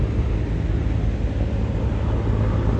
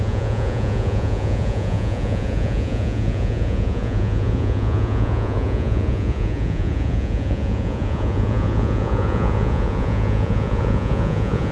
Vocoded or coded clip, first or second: second